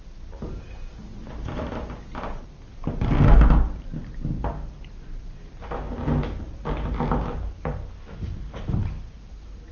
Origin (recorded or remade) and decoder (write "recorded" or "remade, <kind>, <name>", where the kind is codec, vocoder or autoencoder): recorded